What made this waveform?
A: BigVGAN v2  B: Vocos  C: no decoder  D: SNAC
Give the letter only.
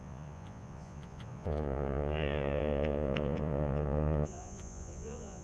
B